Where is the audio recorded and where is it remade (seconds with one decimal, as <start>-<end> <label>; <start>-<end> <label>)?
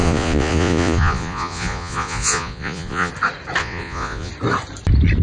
0.0-3.1 remade; 3.1-3.6 recorded; 3.6-4.3 remade; 4.3-5.2 recorded